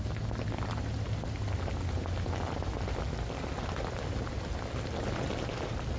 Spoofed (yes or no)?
no